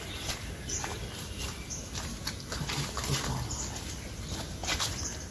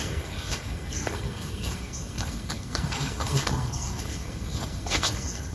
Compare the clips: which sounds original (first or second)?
first